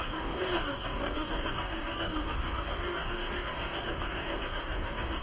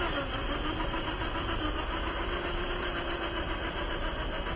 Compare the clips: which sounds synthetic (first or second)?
first